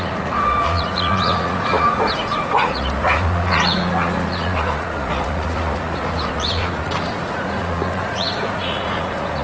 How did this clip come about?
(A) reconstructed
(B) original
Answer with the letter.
A